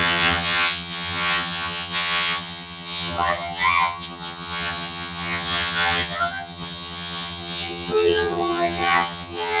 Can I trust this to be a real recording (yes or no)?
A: no